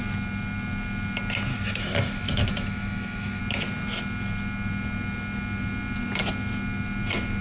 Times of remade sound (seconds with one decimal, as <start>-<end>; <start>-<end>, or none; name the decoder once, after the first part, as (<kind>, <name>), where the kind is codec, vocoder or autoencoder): 1.5-3.4 (autoencoder, DAC-VAE)